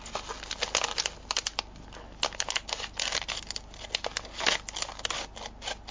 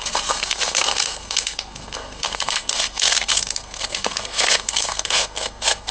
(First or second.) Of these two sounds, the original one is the first